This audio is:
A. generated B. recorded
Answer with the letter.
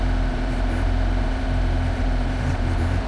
A